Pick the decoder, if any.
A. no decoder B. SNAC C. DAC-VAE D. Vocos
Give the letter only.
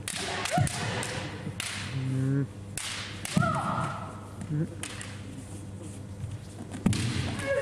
A